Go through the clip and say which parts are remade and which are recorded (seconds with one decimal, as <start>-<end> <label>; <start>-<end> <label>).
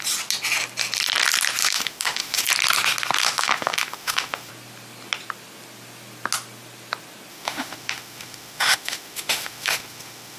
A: 0.0-1.6 recorded; 1.6-2.5 remade; 2.5-3.2 recorded; 3.2-4.5 remade; 4.5-7.3 recorded; 7.3-10.4 remade